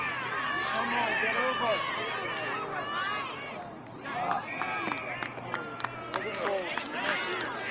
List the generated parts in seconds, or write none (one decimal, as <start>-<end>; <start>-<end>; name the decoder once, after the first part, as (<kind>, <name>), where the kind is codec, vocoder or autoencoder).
none